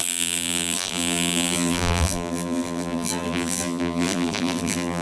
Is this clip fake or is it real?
fake